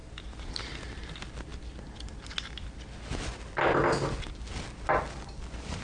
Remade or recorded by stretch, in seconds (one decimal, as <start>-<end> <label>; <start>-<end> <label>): 0.0-5.8 recorded